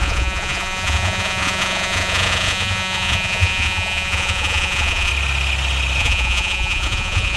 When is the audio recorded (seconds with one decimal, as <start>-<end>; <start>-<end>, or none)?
5.1-6.0